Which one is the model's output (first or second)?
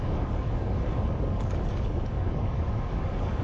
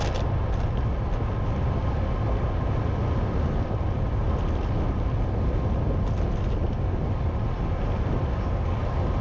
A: first